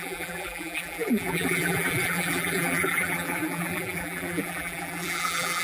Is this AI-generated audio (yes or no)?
yes